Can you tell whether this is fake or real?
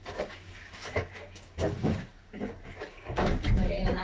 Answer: fake